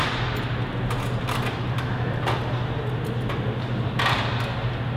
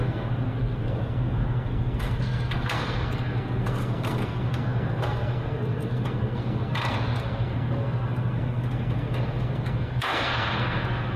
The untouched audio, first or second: first